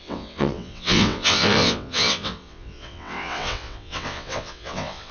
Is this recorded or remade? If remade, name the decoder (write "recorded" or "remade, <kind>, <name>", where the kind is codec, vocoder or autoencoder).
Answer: remade, vocoder, WaveNeXt